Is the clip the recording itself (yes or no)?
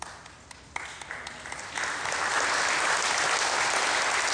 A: yes